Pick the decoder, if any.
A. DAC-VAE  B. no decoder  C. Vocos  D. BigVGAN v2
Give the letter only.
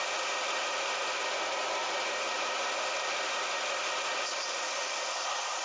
B